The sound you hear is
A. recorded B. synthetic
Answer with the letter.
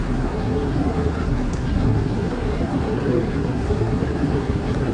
B